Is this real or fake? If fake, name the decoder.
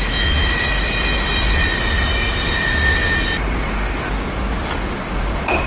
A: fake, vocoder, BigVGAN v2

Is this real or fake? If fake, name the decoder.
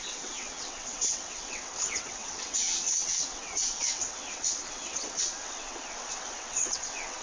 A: fake, vocoder, WaveNeXt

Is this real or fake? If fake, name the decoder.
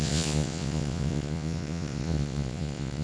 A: fake, vocoder, Vocos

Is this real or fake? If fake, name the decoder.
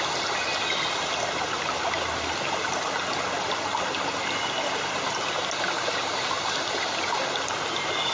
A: real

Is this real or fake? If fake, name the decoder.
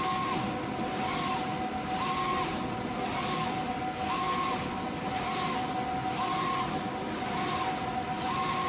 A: real